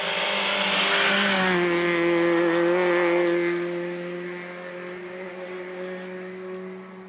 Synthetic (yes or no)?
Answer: no